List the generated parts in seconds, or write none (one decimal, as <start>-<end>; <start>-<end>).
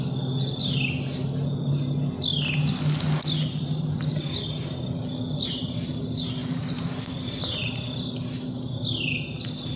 none